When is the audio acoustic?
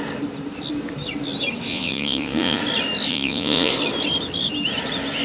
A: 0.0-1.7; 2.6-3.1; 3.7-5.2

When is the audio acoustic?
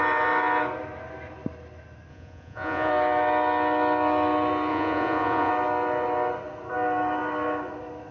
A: 0.0-2.1; 2.9-4.7; 5.5-8.1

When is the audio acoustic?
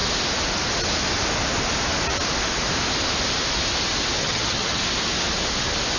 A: 0.0-4.2; 4.8-6.0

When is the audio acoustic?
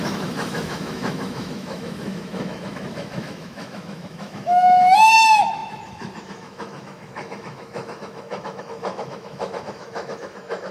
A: none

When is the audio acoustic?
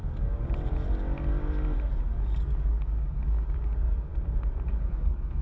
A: 0.0-2.4; 4.1-4.7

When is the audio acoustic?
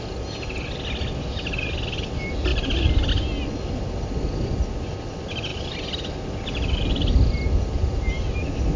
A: 0.0-8.8